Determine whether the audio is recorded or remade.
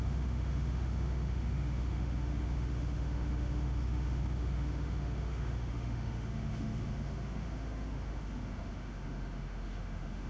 remade